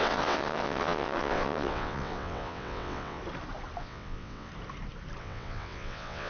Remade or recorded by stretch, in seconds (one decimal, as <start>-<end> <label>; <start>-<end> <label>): 0.0-3.2 remade; 3.2-3.8 recorded; 3.8-4.5 remade; 4.5-5.2 recorded; 5.2-6.3 remade